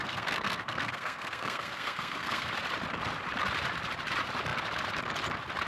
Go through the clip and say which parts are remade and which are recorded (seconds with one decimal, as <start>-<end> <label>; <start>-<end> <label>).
0.0-2.5 remade; 2.5-5.7 recorded